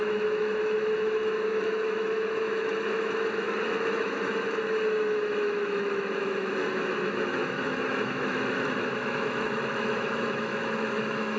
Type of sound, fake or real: fake